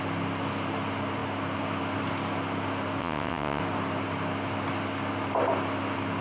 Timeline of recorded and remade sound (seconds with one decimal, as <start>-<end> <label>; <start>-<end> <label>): 0.0-3.0 recorded; 3.0-3.6 remade; 3.6-6.2 recorded